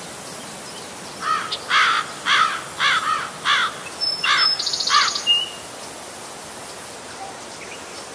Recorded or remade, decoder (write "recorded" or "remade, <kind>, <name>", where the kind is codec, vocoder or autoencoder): recorded